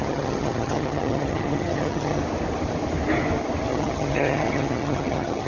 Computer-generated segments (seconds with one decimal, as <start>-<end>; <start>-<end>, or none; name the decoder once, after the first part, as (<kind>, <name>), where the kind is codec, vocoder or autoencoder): 0.0-2.2 (vocoder, HiFi-GAN); 3.7-5.5